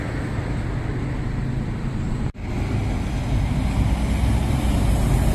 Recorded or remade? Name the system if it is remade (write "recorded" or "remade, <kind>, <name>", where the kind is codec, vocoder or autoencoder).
recorded